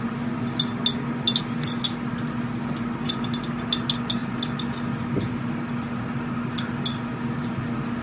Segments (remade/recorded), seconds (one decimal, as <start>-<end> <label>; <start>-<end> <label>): 0.0-8.0 recorded